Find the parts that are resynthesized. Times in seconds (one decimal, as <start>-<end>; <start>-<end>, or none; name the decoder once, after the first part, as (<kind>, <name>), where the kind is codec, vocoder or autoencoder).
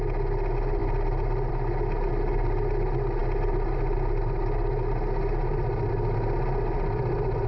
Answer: none